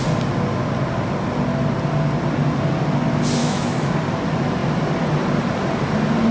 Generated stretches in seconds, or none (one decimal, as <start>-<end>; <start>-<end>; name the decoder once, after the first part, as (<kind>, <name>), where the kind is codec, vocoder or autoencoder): 3.4-3.9 (autoencoder, DAC-VAE)